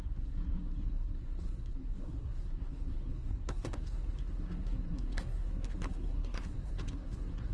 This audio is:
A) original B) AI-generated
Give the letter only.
B